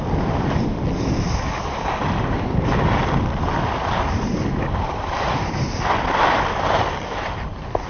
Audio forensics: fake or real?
real